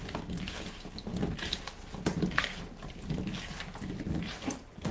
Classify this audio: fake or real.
real